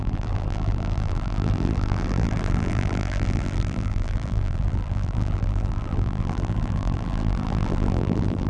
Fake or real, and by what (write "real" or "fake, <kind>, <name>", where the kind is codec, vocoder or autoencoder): fake, vocoder, BigVGAN v2